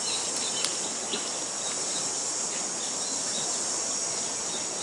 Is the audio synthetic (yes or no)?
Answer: no